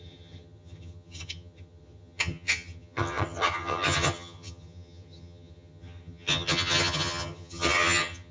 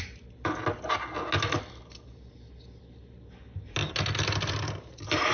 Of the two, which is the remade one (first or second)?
first